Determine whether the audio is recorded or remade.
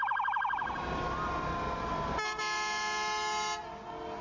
recorded